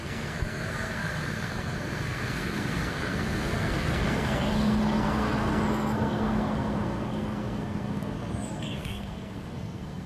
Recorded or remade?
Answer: remade